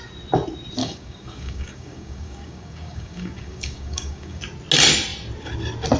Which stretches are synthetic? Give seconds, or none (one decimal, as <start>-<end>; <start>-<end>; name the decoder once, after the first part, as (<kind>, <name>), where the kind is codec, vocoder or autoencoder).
0.8-4.4 (codec, DAC)